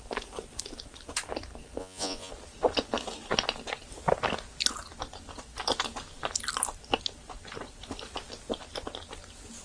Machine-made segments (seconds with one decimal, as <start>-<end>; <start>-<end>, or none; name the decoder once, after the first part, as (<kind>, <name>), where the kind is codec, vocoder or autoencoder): 1.8-2.3 (vocoder, Vocos)